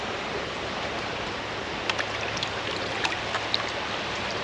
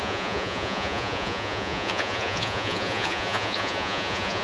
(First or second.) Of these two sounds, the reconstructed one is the second